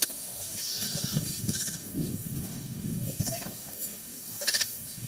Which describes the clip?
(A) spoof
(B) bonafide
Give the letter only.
A